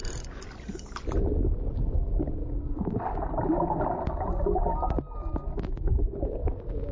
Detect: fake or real real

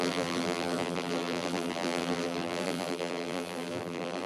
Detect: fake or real fake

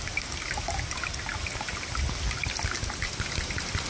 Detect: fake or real real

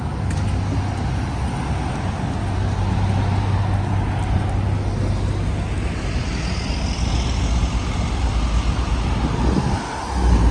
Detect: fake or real real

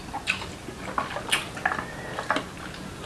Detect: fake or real real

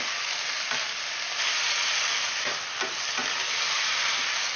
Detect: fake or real real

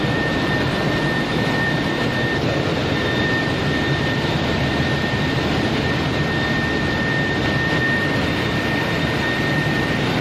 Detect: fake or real fake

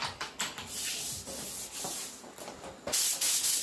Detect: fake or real real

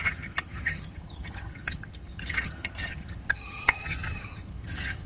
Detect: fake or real fake